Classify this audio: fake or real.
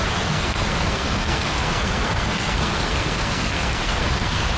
fake